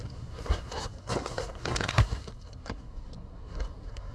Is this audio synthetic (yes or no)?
yes